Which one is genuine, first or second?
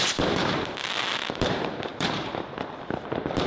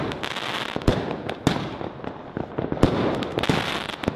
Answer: second